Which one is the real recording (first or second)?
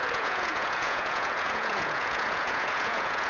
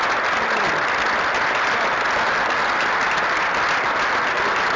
second